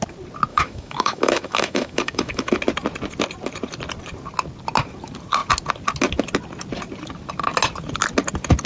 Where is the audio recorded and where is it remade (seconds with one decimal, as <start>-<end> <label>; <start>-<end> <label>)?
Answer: 0.0-0.5 recorded; 0.5-2.5 remade; 2.5-8.7 recorded